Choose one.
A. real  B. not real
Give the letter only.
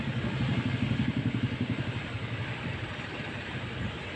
B